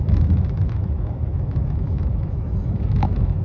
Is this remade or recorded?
remade